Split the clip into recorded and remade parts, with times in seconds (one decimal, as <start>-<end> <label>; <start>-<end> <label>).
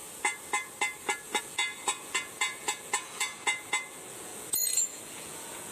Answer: 0.0-1.4 recorded; 1.4-5.7 remade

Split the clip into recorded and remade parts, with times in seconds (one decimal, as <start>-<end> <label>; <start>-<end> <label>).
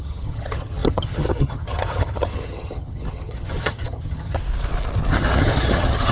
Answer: 0.0-4.4 remade; 4.4-5.1 recorded; 5.1-6.1 remade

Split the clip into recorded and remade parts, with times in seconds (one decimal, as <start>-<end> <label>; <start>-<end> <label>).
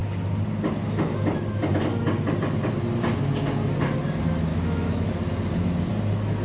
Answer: 0.0-4.5 recorded; 4.5-5.1 remade; 5.1-6.4 recorded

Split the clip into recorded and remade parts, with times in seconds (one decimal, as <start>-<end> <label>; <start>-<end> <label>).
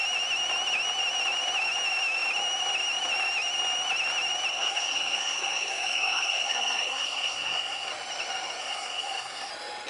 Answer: 0.0-4.5 recorded; 4.5-7.9 remade; 7.9-8.6 recorded; 8.6-9.5 remade; 9.5-9.9 recorded